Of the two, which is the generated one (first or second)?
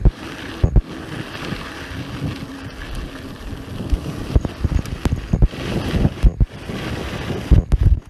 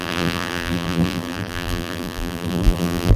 second